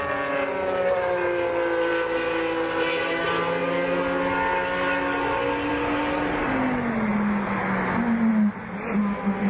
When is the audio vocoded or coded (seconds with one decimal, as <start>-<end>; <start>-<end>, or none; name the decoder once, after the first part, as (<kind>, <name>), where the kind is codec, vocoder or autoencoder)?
none